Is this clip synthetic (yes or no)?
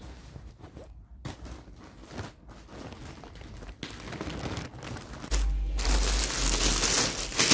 no